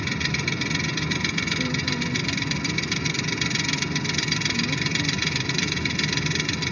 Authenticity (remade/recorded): remade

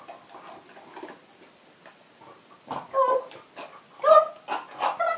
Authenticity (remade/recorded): recorded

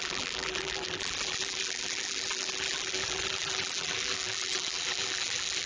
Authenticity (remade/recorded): remade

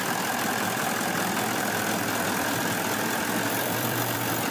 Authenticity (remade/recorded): remade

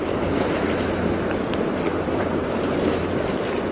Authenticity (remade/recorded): remade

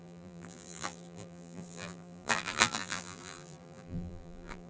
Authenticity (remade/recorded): remade